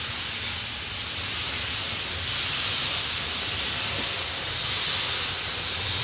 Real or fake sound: real